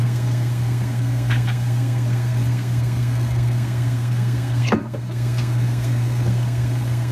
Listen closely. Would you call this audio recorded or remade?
remade